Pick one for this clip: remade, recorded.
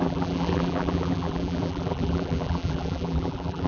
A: remade